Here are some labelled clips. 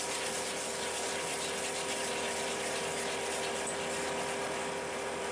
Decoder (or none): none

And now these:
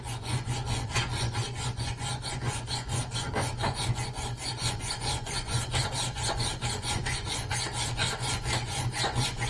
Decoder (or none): vocoder, Vocos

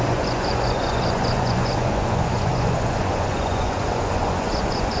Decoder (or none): vocoder, Vocos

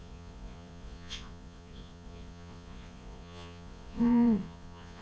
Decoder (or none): vocoder, Vocos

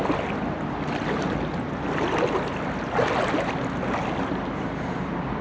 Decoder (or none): none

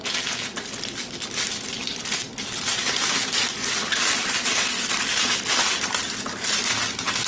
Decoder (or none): none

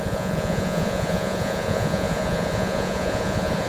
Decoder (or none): vocoder, Vocos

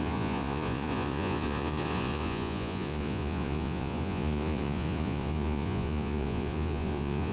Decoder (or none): vocoder, Vocos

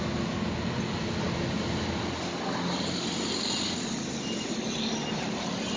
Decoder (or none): none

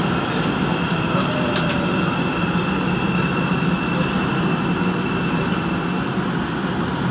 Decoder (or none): none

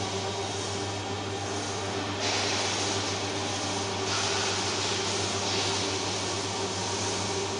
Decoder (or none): none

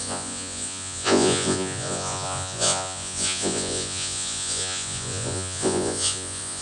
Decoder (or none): vocoder, Vocos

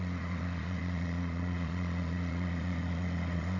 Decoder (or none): vocoder, Vocos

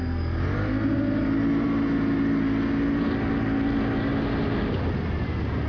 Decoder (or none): none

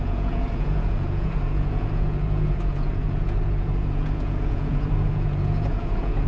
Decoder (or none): vocoder, Vocos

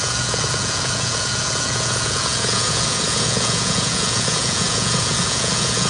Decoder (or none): vocoder, Vocos